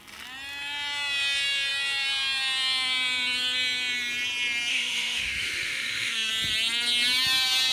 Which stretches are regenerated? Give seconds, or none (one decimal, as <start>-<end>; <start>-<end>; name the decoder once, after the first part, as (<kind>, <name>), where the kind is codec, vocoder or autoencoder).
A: 4.7-6.3 (autoencoder, DAC-VAE)

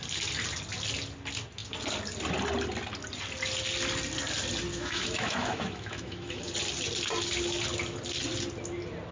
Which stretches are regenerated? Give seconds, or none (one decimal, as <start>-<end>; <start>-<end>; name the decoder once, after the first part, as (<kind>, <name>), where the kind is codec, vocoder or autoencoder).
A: 4.7-6.5 (autoencoder, DAC-VAE)

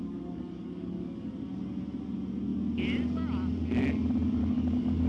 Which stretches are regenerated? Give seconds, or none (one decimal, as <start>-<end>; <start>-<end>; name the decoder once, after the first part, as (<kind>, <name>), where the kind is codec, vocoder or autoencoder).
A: 0.0-1.3 (codec, DAC); 4.4-5.1

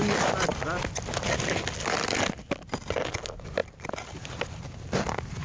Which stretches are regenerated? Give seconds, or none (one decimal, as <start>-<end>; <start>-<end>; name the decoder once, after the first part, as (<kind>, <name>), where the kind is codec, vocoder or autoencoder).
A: none

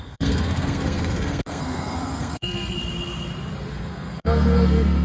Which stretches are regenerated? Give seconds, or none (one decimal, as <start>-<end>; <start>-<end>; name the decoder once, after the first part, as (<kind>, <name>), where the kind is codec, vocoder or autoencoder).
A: 0.0-2.8 (codec, SNAC); 3.7-5.0

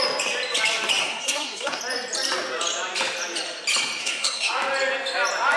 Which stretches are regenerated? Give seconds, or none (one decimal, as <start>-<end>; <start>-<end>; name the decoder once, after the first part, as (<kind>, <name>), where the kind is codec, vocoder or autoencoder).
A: 1.0-1.8 (codec, SNAC); 4.0-4.5

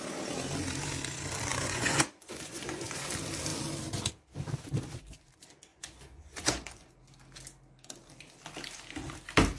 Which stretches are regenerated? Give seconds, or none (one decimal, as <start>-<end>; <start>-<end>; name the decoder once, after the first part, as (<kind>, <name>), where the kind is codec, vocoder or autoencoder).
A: 1.5-3.1 (vocoder, Vocos); 5.7-6.9